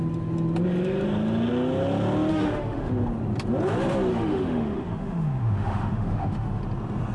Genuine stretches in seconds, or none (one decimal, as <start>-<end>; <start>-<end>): 0.0-2.3; 2.9-4.1; 6.6-7.1